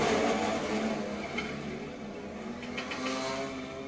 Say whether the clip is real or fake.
real